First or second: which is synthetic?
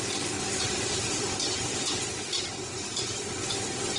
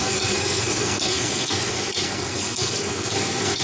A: second